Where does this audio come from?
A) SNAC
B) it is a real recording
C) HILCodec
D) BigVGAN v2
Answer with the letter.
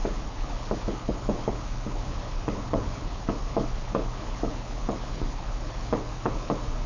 C